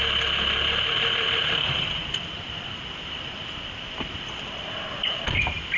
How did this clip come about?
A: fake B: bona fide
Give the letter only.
A